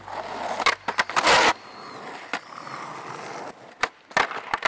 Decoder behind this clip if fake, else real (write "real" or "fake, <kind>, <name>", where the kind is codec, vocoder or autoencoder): real